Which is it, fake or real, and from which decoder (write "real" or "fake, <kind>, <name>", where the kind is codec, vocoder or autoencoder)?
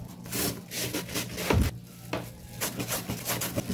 real